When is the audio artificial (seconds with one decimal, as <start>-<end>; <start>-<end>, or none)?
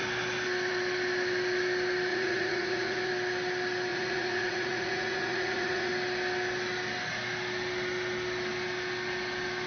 2.1-3.1; 3.9-5.9